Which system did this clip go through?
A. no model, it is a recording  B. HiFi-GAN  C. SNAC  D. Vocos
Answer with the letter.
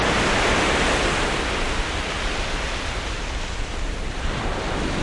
A